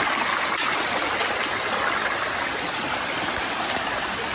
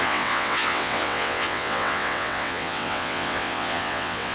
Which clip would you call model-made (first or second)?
second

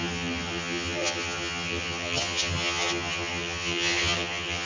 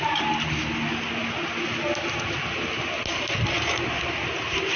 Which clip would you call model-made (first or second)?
first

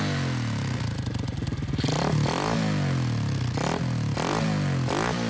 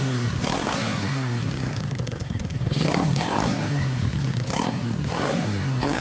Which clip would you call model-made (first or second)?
second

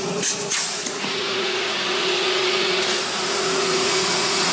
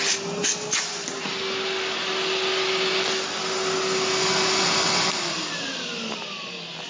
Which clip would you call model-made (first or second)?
first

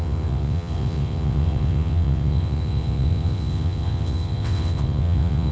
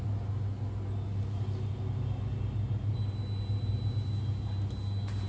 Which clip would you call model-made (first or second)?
first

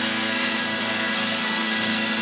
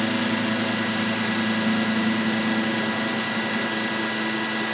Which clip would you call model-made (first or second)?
first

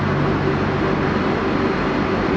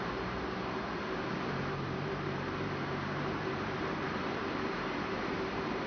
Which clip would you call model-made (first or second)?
second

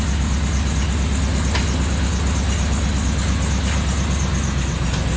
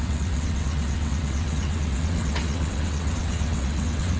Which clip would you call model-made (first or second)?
second